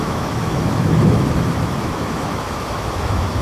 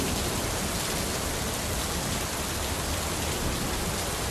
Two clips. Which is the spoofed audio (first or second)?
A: first